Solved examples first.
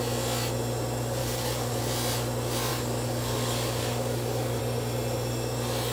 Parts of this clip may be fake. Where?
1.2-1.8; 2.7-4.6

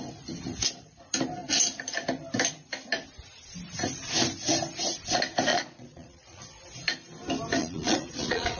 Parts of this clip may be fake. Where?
5.5-6.4; 7.6-8.6

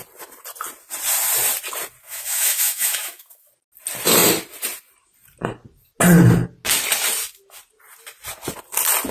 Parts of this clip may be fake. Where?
2.0-3.5

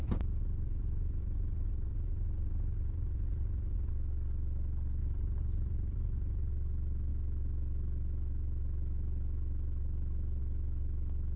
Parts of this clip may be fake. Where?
0.0-3.9; 5.0-6.5